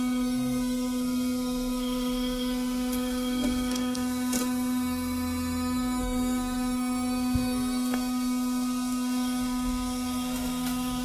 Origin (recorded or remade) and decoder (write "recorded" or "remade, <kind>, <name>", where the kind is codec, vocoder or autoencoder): remade, codec, SNAC